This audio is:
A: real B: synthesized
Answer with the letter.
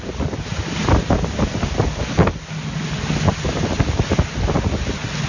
A